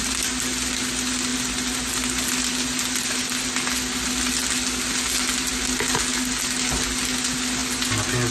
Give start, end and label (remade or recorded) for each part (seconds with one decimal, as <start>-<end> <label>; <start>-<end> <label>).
0.0-8.3 recorded